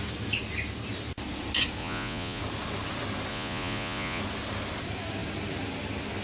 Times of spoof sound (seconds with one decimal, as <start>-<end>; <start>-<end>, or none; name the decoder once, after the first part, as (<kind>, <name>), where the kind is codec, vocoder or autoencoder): 1.8-2.4 (vocoder, Vocos); 3.3-4.2